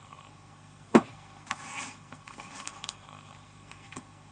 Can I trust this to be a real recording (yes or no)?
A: no